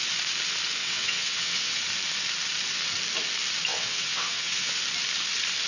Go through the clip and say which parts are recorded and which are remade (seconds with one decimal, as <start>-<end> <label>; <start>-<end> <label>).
0.0-0.8 recorded; 0.8-1.8 remade; 1.8-3.7 recorded; 3.7-4.8 remade; 4.8-5.7 recorded